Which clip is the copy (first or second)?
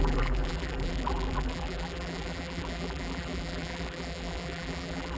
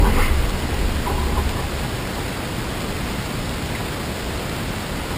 first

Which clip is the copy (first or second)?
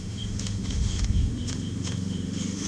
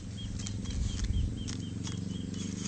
first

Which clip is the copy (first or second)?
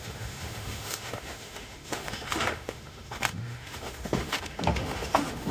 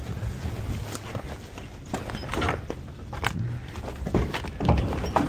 first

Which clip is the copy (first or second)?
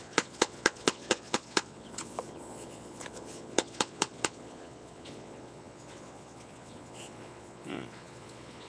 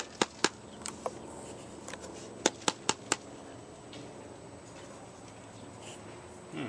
first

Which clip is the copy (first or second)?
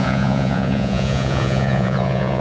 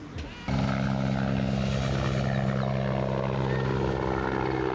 first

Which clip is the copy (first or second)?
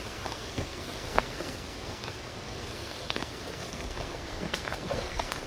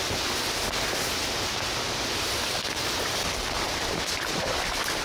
first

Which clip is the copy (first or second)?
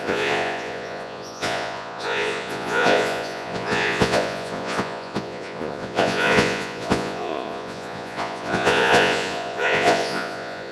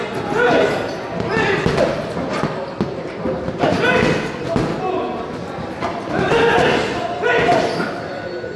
first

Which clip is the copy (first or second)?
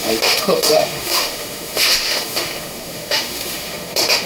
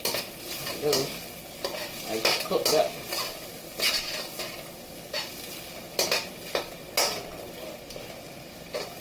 first